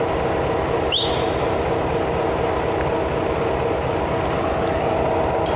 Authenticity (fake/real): real